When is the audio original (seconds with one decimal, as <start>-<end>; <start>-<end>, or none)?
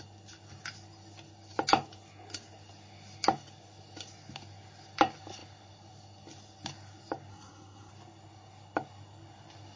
0.0-7.3; 7.9-9.8